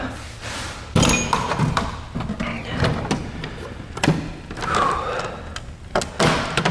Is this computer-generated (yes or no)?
no